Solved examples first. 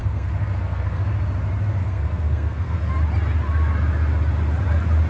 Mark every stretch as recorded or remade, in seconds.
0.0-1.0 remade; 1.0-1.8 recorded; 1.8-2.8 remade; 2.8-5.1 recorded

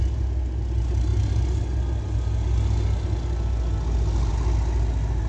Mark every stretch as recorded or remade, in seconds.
0.0-5.3 recorded

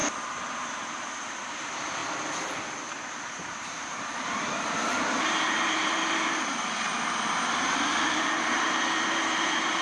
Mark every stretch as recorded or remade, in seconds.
0.0-0.6 recorded; 0.6-2.0 remade; 2.0-2.8 recorded; 2.8-9.8 remade

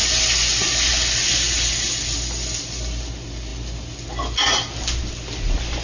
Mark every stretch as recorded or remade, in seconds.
0.0-5.8 recorded

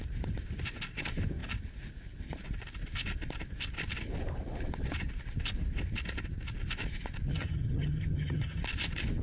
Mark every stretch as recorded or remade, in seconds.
0.0-7.3 recorded; 7.3-8.6 remade; 8.6-9.2 recorded

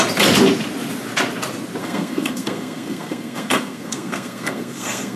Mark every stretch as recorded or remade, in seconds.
0.0-1.8 recorded; 1.8-5.2 remade

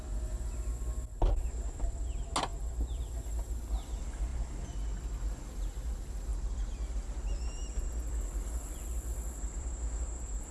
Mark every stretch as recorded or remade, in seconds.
0.0-2.5 recorded; 2.5-3.1 remade; 3.1-6.3 recorded; 6.3-10.5 remade